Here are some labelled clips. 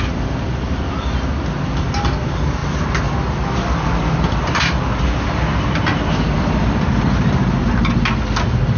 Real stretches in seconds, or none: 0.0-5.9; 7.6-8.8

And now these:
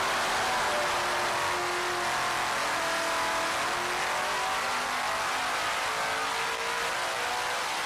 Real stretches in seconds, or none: 0.0-7.9

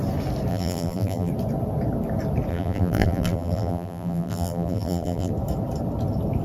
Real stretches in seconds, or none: 0.0-0.5; 1.3-2.5; 5.3-6.4

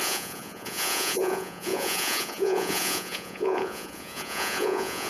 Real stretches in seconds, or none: none